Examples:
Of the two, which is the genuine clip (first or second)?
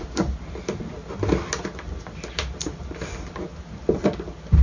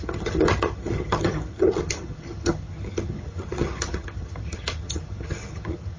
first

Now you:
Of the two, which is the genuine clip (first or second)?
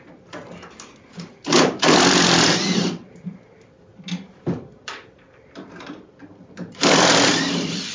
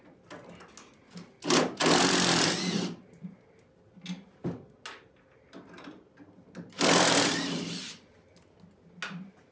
second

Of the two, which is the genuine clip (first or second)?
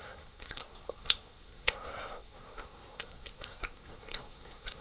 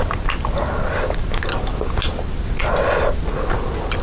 second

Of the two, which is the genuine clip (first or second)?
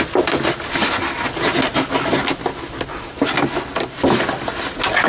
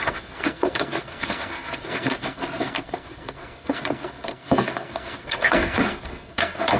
first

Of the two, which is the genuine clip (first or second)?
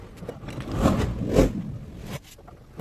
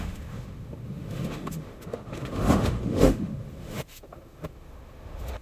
first